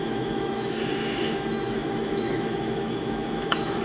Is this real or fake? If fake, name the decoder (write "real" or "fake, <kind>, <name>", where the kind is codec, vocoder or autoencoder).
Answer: fake, autoencoder, DAC-VAE